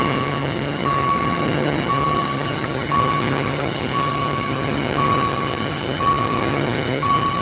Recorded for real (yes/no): no